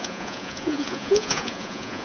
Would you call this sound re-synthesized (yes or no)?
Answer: yes